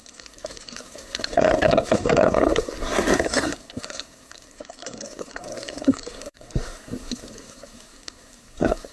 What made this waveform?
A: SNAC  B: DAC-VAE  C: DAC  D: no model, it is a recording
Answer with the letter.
A